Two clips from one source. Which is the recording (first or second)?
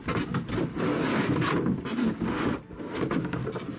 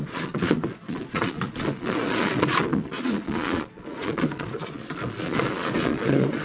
first